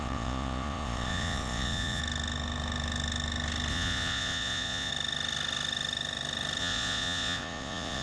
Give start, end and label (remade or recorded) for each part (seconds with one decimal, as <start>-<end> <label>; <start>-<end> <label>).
0.0-2.0 remade; 2.0-3.7 recorded; 3.7-4.9 remade; 4.9-6.6 recorded; 6.6-8.0 remade